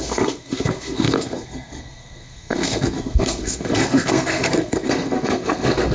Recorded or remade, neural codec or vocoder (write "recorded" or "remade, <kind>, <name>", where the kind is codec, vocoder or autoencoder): remade, codec, SNAC